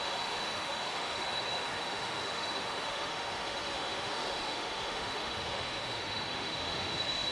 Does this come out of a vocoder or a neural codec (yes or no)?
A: yes